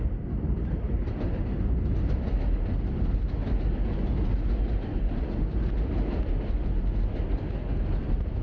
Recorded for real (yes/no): yes